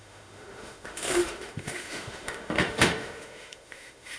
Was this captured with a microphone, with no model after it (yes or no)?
no